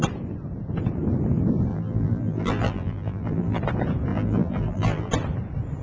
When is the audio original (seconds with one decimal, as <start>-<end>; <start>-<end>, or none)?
0.0-1.7; 3.6-4.1; 5.1-5.8